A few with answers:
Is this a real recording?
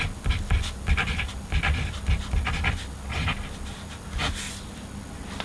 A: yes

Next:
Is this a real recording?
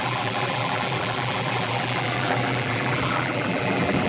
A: no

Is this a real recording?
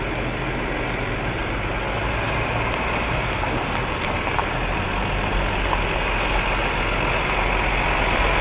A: yes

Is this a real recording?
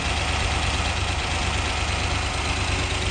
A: yes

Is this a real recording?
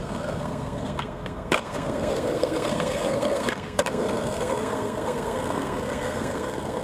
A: no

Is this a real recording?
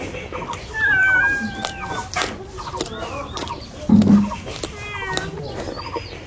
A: yes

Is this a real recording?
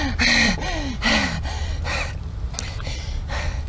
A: yes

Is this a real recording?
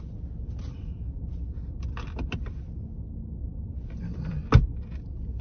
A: yes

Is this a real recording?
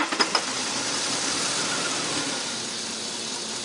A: yes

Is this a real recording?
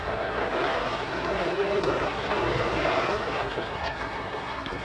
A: no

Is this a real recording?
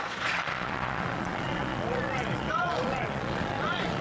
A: no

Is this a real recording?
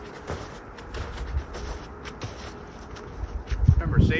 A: yes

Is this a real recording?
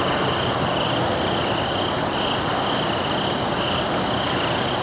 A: yes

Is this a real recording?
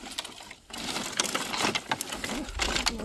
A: yes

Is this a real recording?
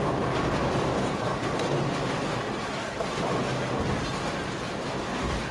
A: yes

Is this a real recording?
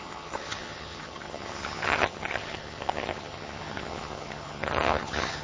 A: no